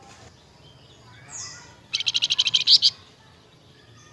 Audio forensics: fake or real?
real